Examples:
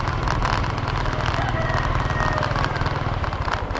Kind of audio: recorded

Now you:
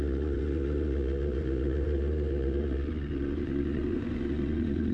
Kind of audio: remade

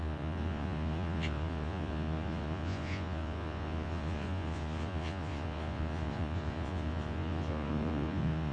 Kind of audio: remade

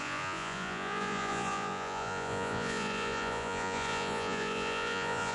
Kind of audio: remade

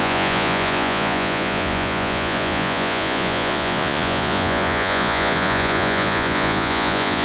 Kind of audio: remade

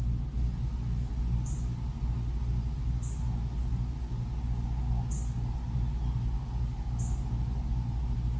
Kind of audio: recorded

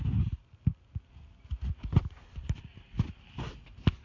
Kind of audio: recorded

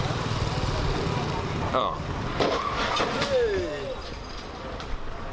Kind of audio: recorded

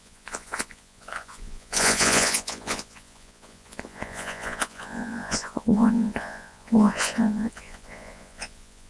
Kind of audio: remade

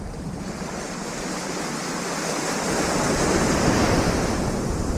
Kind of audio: recorded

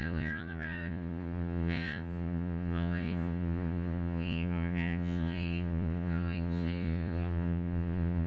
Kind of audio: remade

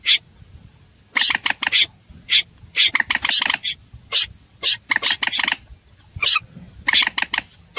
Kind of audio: recorded